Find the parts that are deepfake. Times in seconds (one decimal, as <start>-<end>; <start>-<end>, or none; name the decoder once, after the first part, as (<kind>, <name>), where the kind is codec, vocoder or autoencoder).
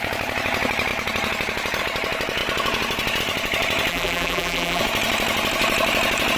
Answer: 3.9-4.8 (vocoder, BigVGAN v2)